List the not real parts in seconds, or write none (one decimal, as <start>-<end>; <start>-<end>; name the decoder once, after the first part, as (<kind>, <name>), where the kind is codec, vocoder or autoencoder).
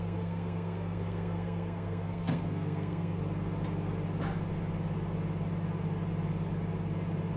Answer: 0.0-3.2 (codec, SNAC)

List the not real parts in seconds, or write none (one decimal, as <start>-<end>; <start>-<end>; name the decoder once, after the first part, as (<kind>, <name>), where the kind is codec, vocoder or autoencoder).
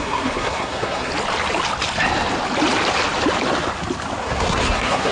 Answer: 0.0-1.1 (codec, SNAC); 4.2-5.1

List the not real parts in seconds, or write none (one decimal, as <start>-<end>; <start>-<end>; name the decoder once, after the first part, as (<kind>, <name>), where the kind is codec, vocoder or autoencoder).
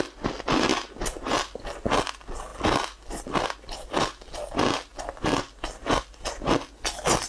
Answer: none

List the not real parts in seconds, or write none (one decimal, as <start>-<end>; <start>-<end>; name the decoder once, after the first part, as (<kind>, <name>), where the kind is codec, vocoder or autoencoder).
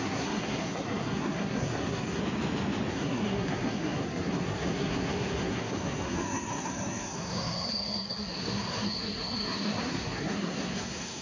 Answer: 0.0-2.2 (codec, SNAC); 2.9-11.2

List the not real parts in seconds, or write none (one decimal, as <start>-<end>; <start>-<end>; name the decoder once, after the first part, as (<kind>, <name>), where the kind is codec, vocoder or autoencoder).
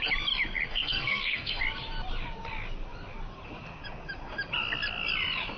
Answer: 0.7-1.6 (codec, SNAC)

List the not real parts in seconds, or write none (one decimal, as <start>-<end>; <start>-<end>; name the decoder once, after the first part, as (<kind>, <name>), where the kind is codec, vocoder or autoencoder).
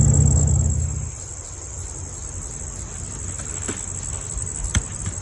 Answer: none